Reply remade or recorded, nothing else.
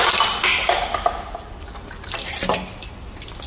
recorded